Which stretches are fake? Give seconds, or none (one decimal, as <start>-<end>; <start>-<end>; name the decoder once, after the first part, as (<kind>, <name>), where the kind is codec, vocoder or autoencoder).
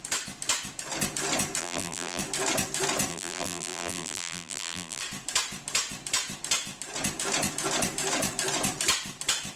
1.6-2.2 (vocoder, BigVGAN v2); 3.1-5.0